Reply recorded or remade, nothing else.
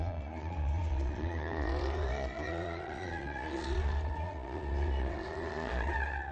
remade